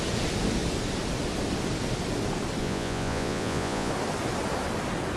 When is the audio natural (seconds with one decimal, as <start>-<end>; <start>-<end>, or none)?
0.0-2.6; 3.9-5.2